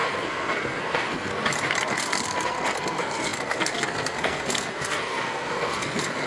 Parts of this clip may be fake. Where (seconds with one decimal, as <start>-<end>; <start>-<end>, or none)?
0.0-1.3; 1.9-6.3